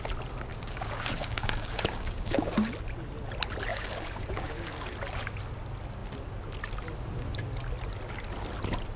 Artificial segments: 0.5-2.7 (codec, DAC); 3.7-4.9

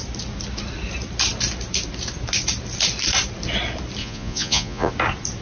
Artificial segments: 4.0-4.9 (vocoder, Vocos)

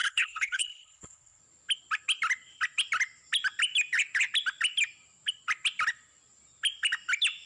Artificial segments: 0.0-1.4 (codec, HILCodec)

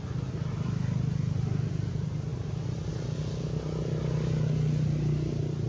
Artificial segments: none

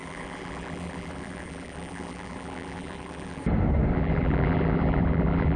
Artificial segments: 0.0-3.4 (vocoder, BigVGAN v2); 3.9-5.6